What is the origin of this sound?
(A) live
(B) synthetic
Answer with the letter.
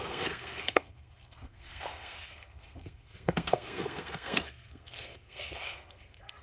B